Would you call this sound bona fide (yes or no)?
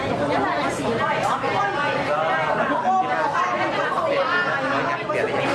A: yes